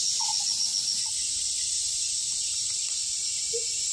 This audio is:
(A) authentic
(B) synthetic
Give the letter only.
A